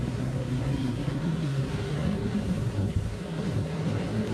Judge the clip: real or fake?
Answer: fake